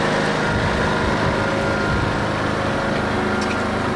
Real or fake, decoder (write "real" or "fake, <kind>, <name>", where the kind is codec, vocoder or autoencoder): real